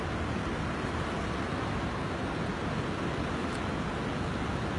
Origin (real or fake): real